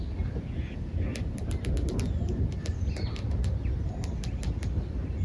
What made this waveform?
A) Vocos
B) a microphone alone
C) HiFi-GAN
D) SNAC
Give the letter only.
B